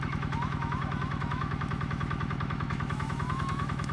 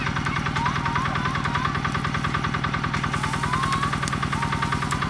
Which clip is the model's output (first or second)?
first